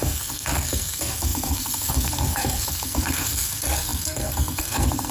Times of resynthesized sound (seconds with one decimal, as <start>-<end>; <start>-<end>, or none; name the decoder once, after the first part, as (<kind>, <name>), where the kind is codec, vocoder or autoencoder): 0.0-5.1 (codec, SNAC)